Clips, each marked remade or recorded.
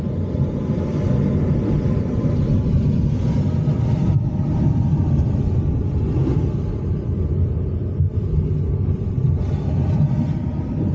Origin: recorded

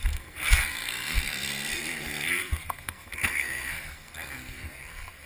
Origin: remade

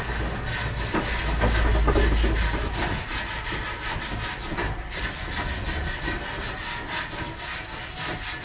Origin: recorded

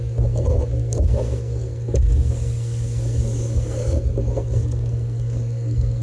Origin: remade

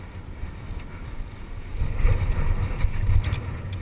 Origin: recorded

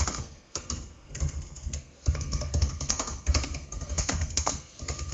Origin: remade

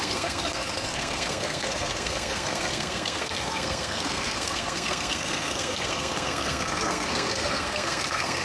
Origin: remade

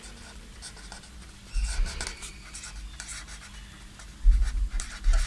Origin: recorded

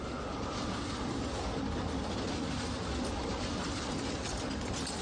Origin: recorded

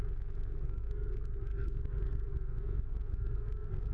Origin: remade